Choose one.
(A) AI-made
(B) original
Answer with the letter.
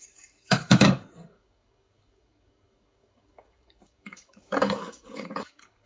A